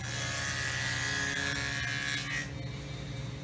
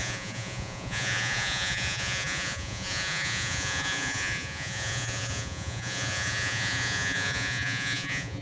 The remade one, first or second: second